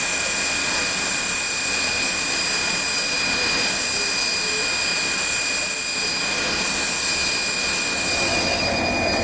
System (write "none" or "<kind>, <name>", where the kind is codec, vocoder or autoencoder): none